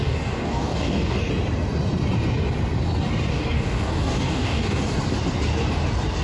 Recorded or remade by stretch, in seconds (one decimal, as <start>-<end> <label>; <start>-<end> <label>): 0.0-1.3 remade; 1.3-3.3 recorded; 3.3-4.8 remade; 4.8-6.2 recorded